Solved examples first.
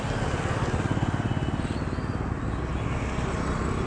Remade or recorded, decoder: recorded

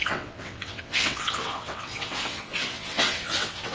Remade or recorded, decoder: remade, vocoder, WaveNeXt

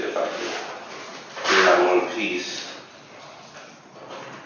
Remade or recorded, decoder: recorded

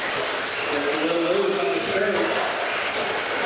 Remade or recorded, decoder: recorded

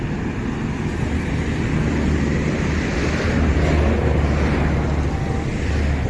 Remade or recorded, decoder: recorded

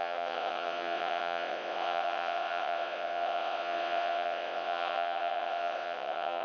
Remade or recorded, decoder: remade, vocoder, WaveNeXt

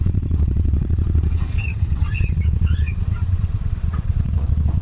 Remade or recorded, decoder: remade, vocoder, WaveNeXt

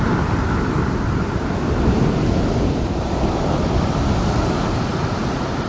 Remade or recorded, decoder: recorded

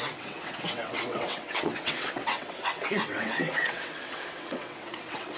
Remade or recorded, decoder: remade, vocoder, WaveNeXt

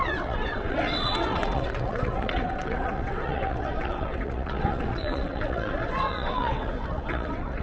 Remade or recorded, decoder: remade, vocoder, WaveNeXt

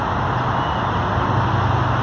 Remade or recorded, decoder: recorded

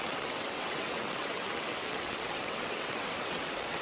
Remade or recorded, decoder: remade, vocoder, WaveNeXt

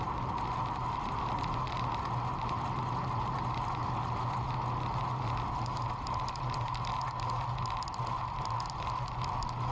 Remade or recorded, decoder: recorded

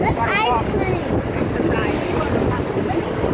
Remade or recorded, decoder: recorded